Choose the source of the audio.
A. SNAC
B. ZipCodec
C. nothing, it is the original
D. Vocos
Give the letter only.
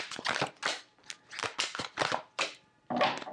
C